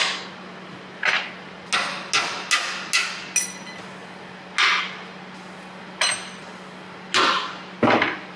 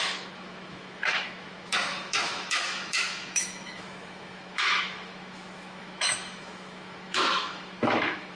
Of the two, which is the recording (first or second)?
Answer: first